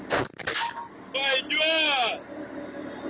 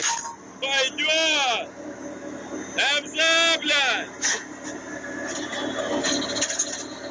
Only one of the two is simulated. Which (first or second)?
first